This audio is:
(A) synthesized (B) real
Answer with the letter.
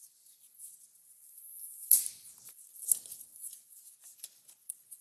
B